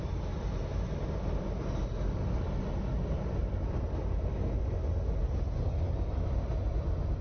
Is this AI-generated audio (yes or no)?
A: no